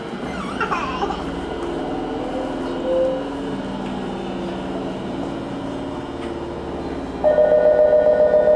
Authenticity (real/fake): real